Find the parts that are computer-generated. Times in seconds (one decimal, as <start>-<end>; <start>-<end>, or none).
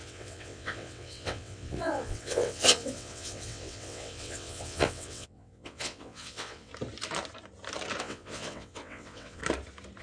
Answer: 0.0-6.7; 8.0-9.4